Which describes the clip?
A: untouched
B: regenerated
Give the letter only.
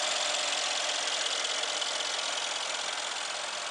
A